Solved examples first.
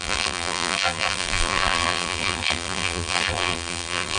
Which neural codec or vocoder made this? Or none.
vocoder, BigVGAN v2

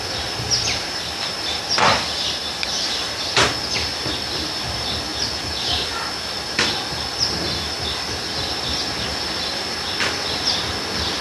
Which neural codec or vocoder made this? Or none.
none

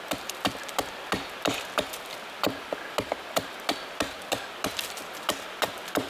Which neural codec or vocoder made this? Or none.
none